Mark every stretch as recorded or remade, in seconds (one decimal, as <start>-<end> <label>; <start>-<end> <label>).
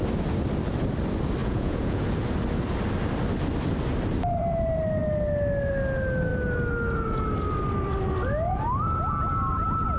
0.0-1.4 recorded; 1.4-2.0 remade; 2.0-10.0 recorded